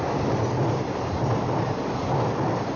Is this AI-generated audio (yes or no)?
no